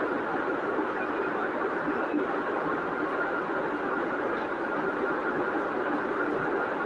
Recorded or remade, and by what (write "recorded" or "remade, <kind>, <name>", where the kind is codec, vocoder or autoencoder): recorded